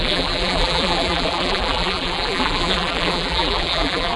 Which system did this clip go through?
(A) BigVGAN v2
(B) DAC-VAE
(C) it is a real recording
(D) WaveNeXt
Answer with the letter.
A